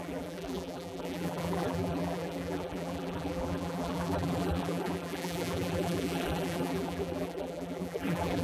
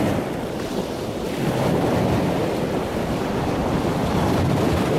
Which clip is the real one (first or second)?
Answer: second